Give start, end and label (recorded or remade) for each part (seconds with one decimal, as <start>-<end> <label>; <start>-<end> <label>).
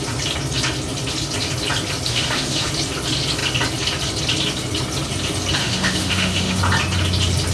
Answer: 0.0-2.1 recorded; 2.1-2.7 remade; 2.7-5.6 recorded; 5.6-6.6 remade; 6.6-7.5 recorded